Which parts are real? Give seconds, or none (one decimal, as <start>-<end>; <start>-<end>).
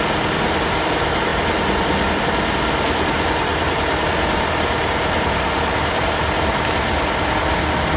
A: 0.0-8.0